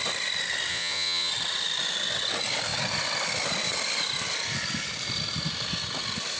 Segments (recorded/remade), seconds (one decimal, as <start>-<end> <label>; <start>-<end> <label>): 0.0-0.7 recorded; 0.7-1.3 remade; 1.3-6.4 recorded